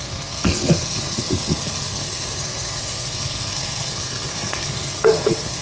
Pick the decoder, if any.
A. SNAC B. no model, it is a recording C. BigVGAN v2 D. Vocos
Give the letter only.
A